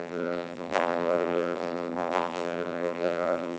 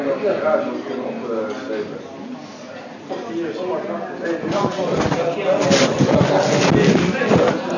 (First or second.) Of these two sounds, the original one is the second